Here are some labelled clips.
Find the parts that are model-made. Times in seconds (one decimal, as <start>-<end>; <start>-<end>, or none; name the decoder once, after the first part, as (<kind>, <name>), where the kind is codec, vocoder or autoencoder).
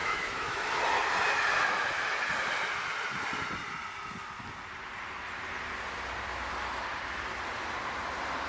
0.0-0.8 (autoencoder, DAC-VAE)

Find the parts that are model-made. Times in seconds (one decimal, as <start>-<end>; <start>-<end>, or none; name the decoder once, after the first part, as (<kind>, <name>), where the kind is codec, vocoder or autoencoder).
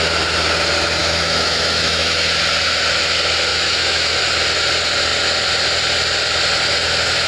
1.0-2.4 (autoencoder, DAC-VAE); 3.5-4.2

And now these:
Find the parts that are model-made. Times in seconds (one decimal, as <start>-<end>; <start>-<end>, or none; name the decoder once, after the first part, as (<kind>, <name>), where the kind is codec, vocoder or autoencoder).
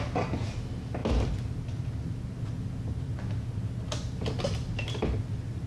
none